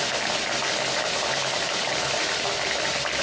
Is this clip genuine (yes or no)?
yes